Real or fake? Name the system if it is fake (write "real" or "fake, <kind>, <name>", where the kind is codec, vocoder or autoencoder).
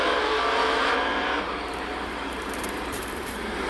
fake, vocoder, BigVGAN v2